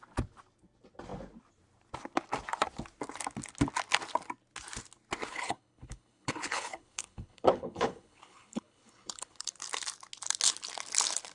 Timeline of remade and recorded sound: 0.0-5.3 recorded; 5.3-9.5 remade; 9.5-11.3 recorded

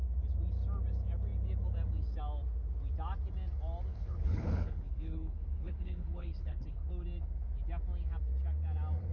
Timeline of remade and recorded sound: 0.0-3.9 recorded; 3.9-6.9 remade; 6.9-9.1 recorded